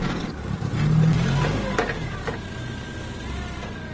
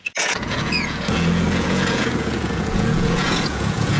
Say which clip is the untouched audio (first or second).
first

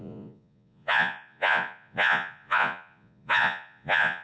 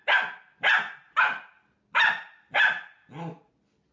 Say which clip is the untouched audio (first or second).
second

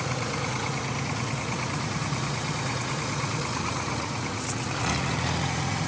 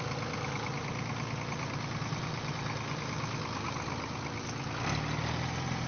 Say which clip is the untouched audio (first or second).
second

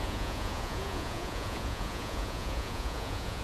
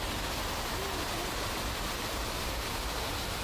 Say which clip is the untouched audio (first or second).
second